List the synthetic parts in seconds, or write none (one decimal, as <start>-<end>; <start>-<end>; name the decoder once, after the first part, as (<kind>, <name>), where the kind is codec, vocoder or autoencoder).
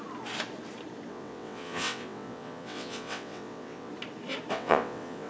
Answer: 1.1-3.9 (vocoder, WaveNeXt); 4.5-5.3